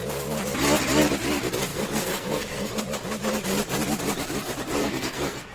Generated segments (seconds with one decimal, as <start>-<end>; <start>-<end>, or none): 1.7-2.7; 4.8-5.5